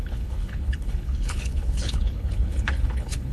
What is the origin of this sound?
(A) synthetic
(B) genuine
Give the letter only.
A